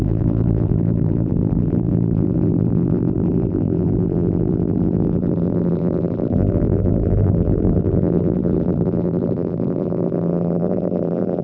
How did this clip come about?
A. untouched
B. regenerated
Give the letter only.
B